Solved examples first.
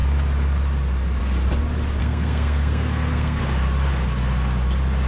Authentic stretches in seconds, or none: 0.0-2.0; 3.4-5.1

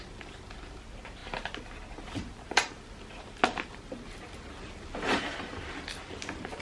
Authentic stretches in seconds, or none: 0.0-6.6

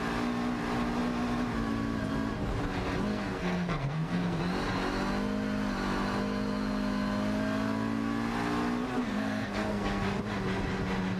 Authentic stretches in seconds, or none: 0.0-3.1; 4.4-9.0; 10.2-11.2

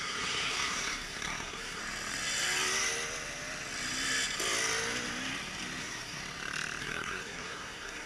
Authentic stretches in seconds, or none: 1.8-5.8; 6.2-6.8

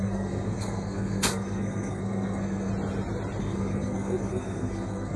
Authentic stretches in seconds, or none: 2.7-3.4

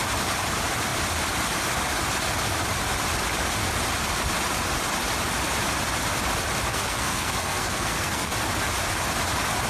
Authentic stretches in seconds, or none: 0.0-6.7; 8.3-9.7

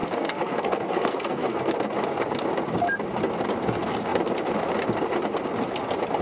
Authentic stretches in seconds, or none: 1.7-6.2

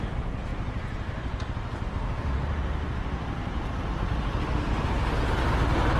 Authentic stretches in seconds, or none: 0.0-6.0